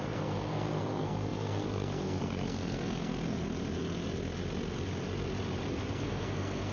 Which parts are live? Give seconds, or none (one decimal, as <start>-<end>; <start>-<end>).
3.4-5.9